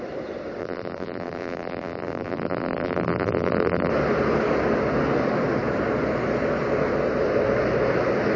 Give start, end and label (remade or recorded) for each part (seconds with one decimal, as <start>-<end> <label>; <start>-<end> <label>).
0.0-0.6 recorded; 0.6-3.9 remade; 3.9-8.4 recorded